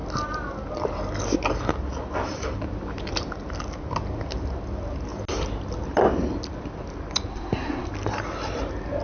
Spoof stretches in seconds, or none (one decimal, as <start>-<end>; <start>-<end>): 7.3-7.9